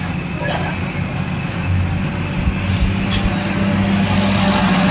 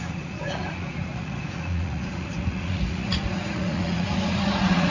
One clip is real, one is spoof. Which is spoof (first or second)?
second